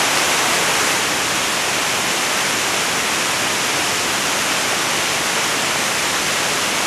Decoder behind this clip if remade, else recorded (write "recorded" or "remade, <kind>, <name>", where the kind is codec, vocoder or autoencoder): recorded